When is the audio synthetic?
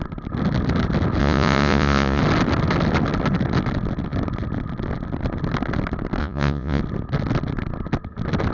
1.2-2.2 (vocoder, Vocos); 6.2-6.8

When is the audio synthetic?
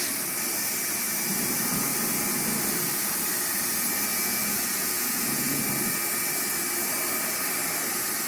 4.1-5.6 (vocoder, Vocos)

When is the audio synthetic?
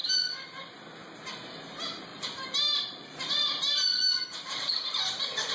2.1-5.5 (vocoder, BigVGAN v2)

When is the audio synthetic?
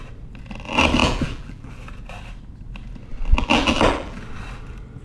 1.0-1.7 (vocoder, BigVGAN v2); 3.3-4.2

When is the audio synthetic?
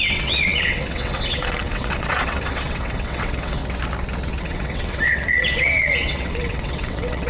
0.0-3.6 (vocoder, WaveNeXt); 4.4-7.3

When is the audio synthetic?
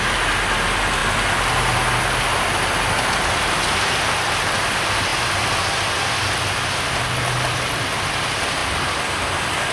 none